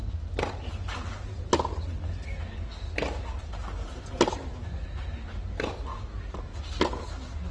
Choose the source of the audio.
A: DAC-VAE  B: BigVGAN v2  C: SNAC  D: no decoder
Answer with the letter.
D